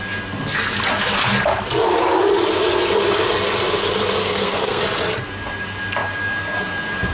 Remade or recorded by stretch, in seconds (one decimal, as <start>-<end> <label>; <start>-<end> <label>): 0.0-4.2 recorded; 4.2-4.8 remade; 4.8-7.1 recorded